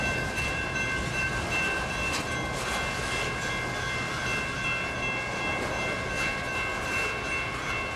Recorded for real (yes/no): yes